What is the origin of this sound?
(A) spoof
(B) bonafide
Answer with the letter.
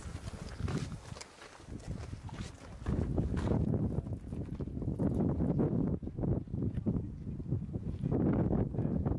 B